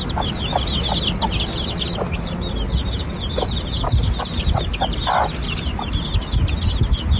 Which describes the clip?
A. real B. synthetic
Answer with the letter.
A